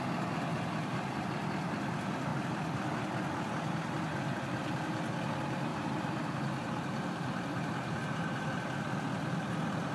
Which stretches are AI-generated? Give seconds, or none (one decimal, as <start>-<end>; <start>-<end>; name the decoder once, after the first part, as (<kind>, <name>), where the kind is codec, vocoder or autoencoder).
0.5-1.3 (vocoder, BigVGAN v2); 5.7-8.4